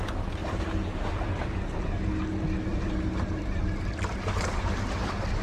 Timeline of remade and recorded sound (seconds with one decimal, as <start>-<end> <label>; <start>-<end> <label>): 0.0-0.4 recorded; 0.4-1.1 remade; 1.1-2.7 recorded; 2.7-3.6 remade; 3.6-5.4 recorded